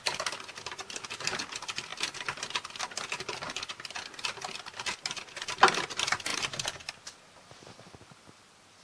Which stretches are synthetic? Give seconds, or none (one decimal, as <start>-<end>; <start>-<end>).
1.9-5.3